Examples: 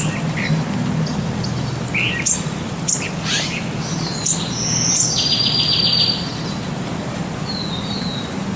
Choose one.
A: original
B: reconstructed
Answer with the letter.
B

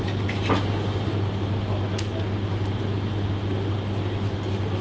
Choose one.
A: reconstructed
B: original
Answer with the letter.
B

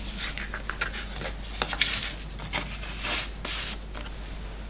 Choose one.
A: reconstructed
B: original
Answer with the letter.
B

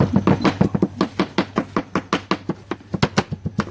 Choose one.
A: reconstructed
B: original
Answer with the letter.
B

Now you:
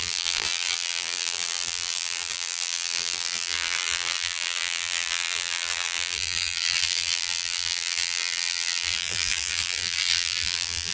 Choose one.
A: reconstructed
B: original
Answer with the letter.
A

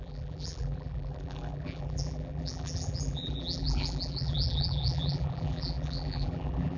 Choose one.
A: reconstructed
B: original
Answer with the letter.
A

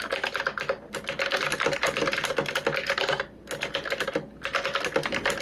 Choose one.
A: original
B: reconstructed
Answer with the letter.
A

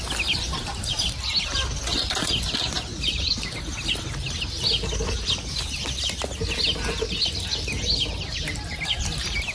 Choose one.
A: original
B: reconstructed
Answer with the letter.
A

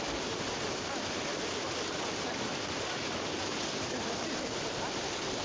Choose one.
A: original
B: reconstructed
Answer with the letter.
A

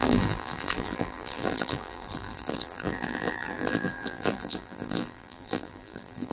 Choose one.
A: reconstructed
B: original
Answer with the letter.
A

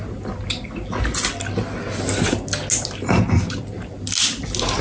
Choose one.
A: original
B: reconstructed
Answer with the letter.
A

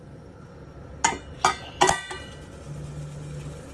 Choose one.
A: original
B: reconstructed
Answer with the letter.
A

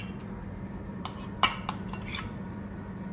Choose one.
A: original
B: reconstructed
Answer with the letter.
A